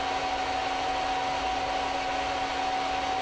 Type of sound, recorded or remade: recorded